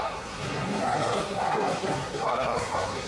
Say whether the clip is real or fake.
fake